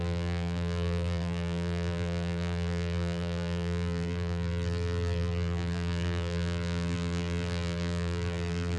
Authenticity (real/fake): fake